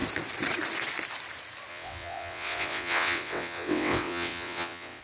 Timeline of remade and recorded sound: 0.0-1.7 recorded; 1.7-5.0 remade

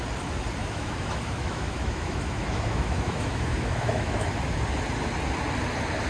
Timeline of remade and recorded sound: 0.0-0.6 recorded; 0.6-4.3 remade; 4.3-6.1 recorded

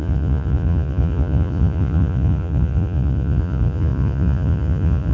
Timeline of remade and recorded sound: 0.0-5.1 remade